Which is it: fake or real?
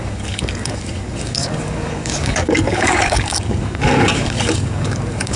fake